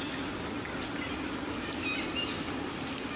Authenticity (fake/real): real